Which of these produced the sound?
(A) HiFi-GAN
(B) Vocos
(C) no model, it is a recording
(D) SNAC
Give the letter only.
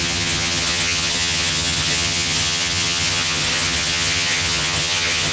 A